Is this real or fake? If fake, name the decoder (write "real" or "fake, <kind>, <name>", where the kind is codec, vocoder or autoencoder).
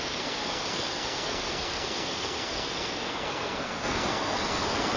fake, codec, SNAC